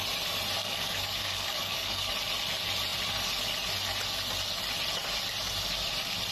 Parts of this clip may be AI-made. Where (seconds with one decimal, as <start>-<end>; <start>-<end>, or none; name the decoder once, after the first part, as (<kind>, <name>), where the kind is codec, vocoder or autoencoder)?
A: 0.6-2.1 (codec, DAC)